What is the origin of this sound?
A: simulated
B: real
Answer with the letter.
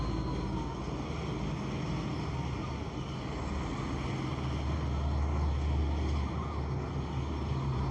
B